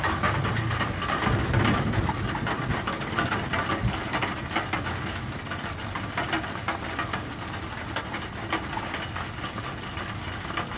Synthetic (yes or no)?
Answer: no